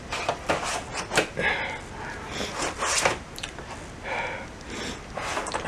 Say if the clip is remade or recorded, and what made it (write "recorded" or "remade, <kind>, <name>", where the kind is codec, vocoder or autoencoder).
recorded